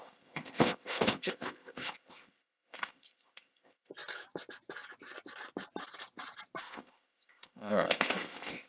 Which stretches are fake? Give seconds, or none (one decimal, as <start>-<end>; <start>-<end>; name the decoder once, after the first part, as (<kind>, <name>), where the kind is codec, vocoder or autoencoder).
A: 0.0-3.9 (codec, ZipCodec); 6.6-8.7